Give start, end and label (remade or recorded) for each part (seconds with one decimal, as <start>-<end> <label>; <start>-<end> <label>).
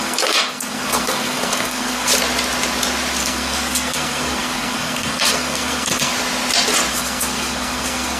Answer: 0.0-2.1 remade; 2.1-3.2 recorded; 3.2-6.1 remade; 6.1-6.9 recorded; 6.9-8.2 remade